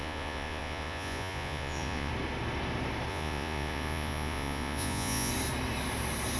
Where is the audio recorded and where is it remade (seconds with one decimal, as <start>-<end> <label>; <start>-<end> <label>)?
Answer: 0.0-2.1 remade; 2.1-3.1 recorded; 3.1-5.3 remade; 5.3-6.4 recorded